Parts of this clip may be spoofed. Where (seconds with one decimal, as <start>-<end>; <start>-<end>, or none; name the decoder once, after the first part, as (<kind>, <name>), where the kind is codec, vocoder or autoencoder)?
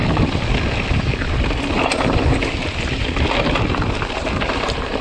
none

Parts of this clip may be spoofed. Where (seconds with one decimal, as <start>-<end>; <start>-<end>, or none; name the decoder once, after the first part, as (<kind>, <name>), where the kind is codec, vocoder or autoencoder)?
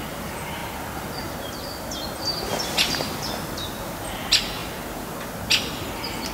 none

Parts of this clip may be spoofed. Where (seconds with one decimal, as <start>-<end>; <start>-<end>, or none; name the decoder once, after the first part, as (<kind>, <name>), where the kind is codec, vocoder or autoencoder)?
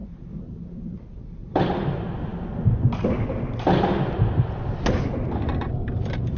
0.0-1.7 (vocoder, BigVGAN v2)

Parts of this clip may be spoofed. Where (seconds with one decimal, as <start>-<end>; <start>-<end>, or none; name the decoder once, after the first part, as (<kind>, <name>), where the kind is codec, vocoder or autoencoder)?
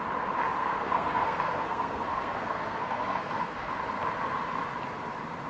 0.6-3.7 (codec, SNAC)